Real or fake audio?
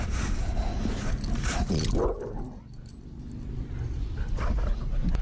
real